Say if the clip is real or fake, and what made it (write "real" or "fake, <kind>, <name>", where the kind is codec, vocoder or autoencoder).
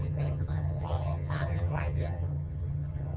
fake, vocoder, HiFi-GAN